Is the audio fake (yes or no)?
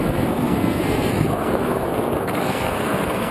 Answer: yes